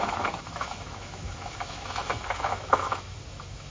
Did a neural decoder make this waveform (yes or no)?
yes